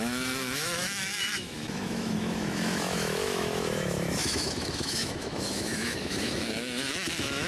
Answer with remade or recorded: remade